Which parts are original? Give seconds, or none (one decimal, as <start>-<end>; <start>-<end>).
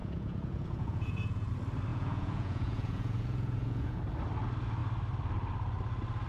1.5-1.9; 4.0-6.3